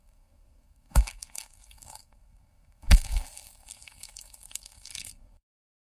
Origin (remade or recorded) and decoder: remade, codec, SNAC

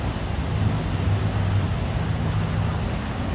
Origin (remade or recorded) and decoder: recorded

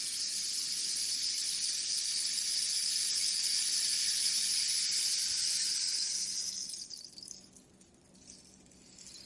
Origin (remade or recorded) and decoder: recorded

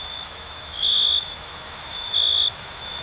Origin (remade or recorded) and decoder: remade, autoencoder, DAC-VAE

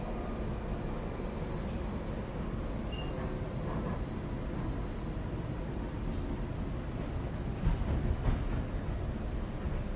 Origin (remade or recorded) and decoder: recorded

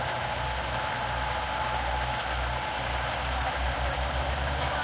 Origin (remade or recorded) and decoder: recorded